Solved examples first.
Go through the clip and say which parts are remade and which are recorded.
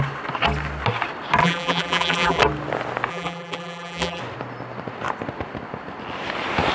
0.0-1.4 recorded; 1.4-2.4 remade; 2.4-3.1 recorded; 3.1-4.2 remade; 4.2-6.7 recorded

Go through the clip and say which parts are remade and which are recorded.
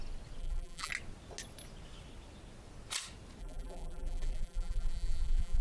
0.0-0.4 recorded; 0.4-0.9 remade; 0.9-3.4 recorded; 3.4-5.6 remade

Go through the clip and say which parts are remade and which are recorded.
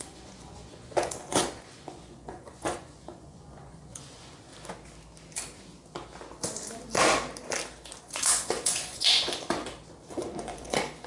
0.0-4.5 remade; 4.5-8.0 recorded; 8.0-9.6 remade; 9.6-10.1 recorded; 10.1-11.1 remade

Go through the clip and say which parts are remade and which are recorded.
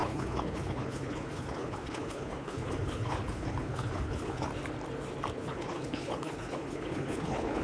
0.0-4.5 remade; 4.5-5.3 recorded; 5.3-7.6 remade